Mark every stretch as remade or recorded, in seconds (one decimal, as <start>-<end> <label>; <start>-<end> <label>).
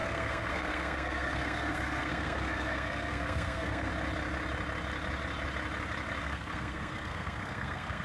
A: 0.0-3.9 remade; 3.9-6.2 recorded; 6.2-8.0 remade